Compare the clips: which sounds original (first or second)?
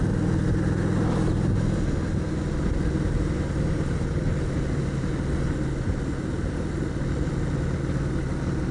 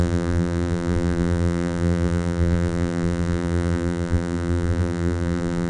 first